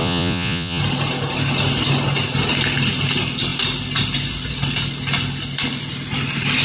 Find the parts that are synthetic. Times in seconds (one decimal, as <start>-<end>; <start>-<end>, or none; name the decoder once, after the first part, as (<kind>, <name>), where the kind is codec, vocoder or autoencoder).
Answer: 0.0-0.8 (vocoder, Vocos)